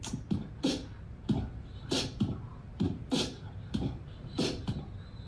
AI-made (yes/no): yes